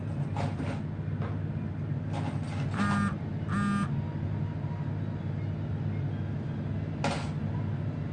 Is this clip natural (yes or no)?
yes